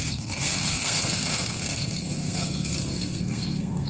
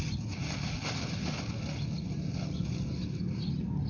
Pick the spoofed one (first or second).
first